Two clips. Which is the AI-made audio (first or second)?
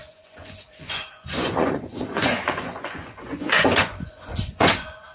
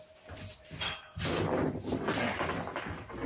first